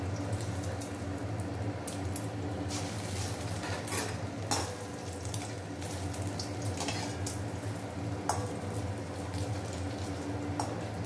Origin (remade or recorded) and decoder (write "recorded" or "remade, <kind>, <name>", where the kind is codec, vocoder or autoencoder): recorded